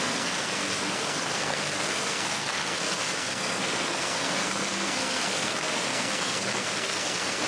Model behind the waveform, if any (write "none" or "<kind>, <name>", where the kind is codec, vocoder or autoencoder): codec, SNAC